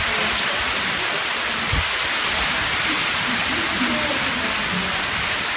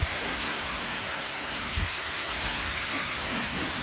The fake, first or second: second